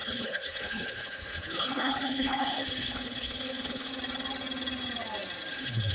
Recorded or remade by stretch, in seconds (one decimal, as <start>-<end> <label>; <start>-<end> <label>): 0.0-3.9 remade; 3.9-5.5 recorded; 5.5-5.9 remade